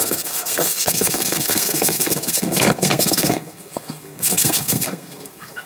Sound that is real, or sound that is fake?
fake